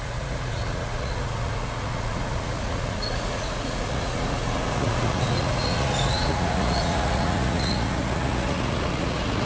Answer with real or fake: fake